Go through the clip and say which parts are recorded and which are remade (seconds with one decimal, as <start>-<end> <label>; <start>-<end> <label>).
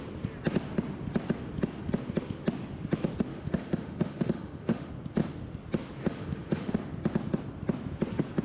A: 0.0-3.3 recorded; 3.3-4.9 remade; 4.9-6.0 recorded; 6.0-6.7 remade; 6.7-8.4 recorded